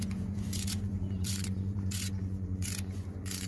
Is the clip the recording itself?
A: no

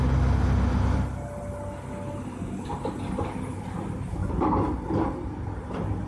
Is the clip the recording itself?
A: yes